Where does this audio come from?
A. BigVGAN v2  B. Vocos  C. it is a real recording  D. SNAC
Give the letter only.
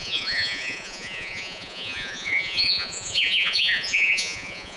B